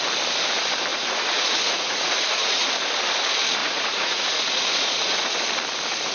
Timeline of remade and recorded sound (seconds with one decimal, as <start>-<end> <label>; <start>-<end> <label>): 0.0-0.9 recorded; 0.9-2.7 remade; 2.7-3.6 recorded; 3.6-5.3 remade; 5.3-6.1 recorded